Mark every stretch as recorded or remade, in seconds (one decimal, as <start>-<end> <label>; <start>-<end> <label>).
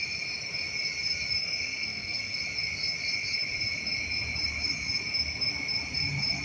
0.0-1.4 recorded; 1.4-2.4 remade; 2.4-6.4 recorded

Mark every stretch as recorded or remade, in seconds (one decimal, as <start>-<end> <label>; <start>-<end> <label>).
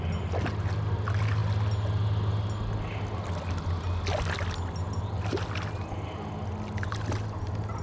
0.0-7.8 recorded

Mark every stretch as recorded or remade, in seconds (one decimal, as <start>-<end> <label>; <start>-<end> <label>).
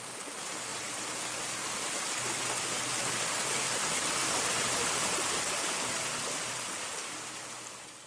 0.0-0.7 recorded; 0.7-1.2 remade; 1.2-4.2 recorded; 4.2-6.1 remade; 6.1-8.1 recorded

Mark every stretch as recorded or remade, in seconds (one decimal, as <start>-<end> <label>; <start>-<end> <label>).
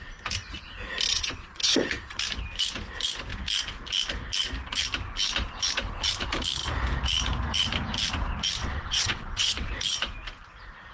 0.0-1.1 recorded; 1.1-2.2 remade; 2.2-8.6 recorded; 8.6-9.7 remade; 9.7-10.9 recorded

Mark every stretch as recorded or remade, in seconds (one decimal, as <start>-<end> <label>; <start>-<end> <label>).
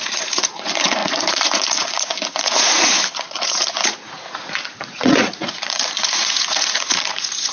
0.0-7.5 remade